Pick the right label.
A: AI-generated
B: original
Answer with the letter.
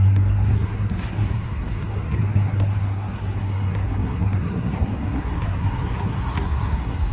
A